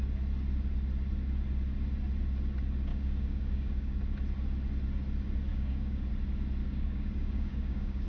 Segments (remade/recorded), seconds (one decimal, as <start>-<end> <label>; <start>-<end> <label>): 0.0-2.9 recorded; 2.9-4.0 remade; 4.0-5.5 recorded; 5.5-6.1 remade; 6.1-6.6 recorded; 6.6-8.1 remade